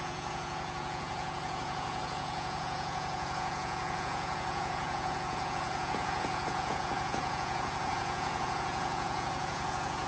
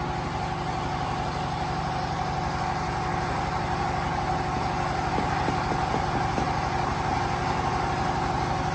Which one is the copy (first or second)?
first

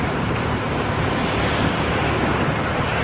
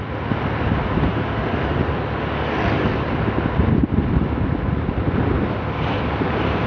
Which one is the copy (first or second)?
first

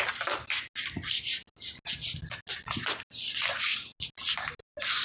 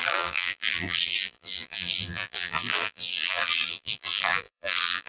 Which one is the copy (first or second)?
second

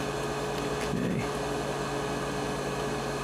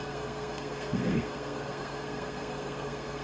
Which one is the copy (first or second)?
second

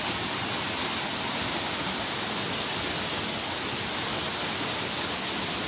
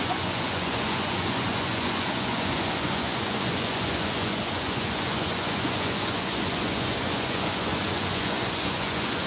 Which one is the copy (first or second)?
second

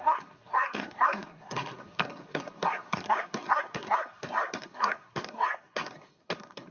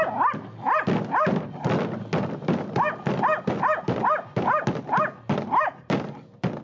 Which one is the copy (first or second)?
first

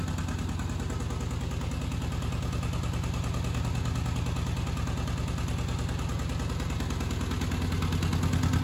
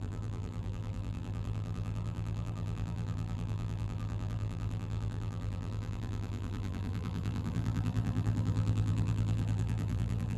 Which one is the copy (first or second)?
second